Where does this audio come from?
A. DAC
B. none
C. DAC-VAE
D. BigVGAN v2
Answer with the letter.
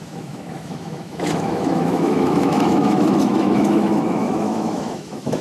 C